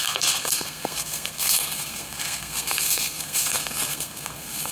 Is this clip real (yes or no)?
no